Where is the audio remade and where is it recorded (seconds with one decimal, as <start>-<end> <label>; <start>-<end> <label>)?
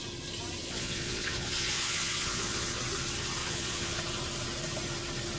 0.0-0.6 recorded; 0.6-2.8 remade; 2.8-3.4 recorded; 3.4-4.0 remade; 4.0-5.4 recorded